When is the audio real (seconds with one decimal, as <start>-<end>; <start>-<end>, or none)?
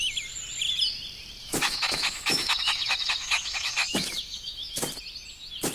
0.0-1.4; 4.8-5.7